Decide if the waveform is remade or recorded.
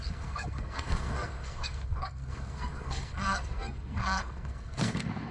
remade